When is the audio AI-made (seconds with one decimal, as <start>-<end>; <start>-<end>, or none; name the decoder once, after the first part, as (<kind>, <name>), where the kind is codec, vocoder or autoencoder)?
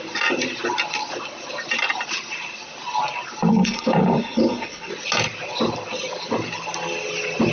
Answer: 3.5-4.9 (codec, HILCodec)